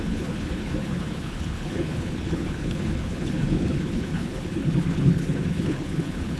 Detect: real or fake fake